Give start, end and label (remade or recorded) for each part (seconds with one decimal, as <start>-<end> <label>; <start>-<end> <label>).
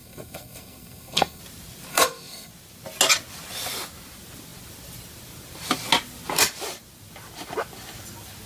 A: 0.0-1.4 remade; 1.4-1.9 recorded; 1.9-2.5 remade; 2.5-8.5 recorded